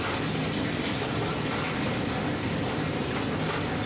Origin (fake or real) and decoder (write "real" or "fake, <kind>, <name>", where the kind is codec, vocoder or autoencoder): real